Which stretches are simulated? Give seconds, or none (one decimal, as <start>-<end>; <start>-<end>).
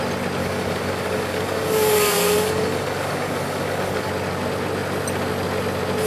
0.4-4.1